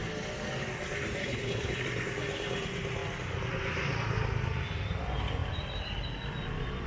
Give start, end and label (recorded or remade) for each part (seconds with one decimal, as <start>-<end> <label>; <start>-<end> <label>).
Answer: 0.0-1.2 recorded; 1.2-1.8 remade; 1.8-6.9 recorded